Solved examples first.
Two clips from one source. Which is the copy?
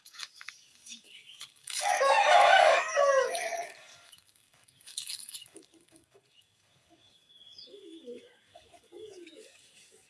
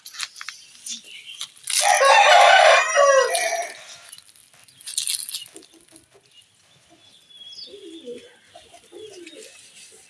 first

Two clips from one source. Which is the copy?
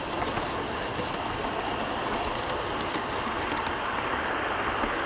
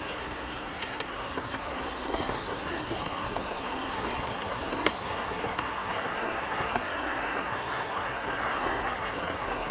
second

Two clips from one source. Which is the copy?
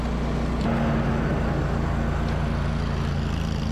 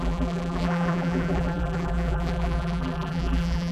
second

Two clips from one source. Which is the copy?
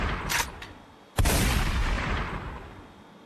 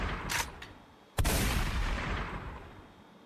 second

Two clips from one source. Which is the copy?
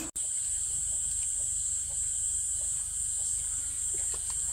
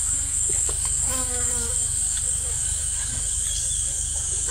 second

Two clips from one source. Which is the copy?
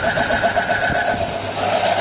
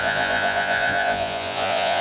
second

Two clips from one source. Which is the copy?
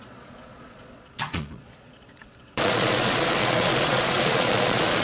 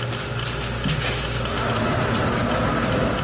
first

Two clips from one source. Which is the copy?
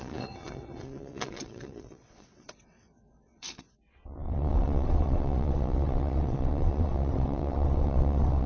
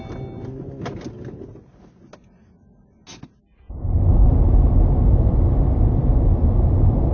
first